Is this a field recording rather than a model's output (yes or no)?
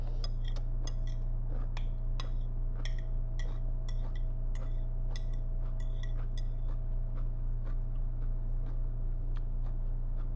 yes